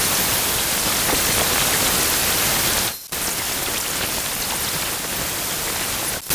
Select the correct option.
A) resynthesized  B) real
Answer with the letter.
B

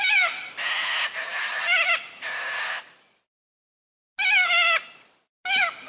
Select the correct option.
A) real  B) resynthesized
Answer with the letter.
A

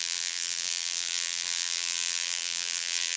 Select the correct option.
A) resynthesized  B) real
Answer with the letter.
A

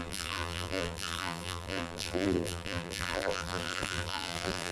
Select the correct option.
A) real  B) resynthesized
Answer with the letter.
B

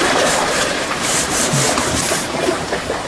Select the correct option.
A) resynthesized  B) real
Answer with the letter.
A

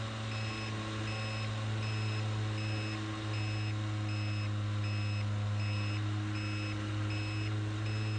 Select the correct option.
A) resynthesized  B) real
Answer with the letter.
B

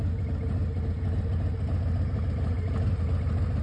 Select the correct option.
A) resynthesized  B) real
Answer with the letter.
B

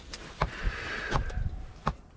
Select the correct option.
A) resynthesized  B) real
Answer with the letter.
B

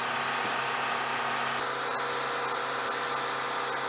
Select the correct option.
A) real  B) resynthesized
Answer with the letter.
A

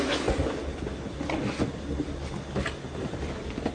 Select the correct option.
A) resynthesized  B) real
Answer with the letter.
B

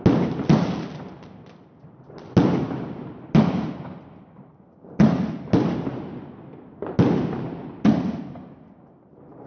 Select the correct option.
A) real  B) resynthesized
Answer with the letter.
A